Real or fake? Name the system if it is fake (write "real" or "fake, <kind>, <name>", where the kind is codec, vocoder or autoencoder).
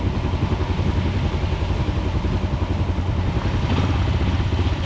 real